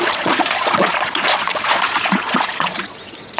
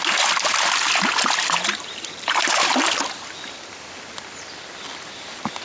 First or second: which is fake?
first